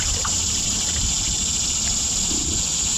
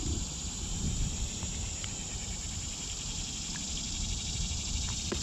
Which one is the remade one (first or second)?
second